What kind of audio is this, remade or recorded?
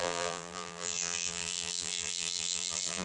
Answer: remade